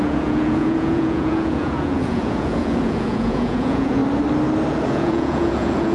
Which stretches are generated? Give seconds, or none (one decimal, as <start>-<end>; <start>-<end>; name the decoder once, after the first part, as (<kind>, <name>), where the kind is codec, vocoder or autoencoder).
0.0-4.0 (vocoder, Vocos); 4.7-5.9